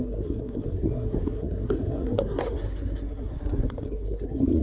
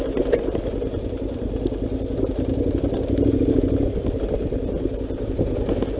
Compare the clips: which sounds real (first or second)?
second